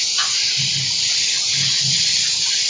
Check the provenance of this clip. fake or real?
real